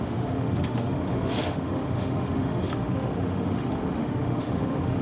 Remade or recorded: remade